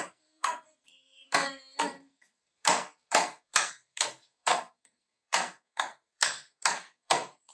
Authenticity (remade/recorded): remade